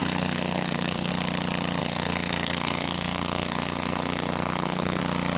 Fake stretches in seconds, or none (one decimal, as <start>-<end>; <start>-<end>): 0.0-1.1; 1.8-5.0